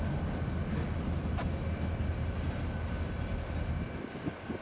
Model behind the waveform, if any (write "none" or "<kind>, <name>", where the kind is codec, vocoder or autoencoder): none